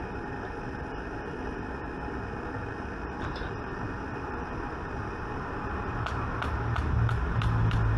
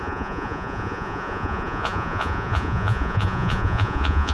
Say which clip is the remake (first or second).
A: second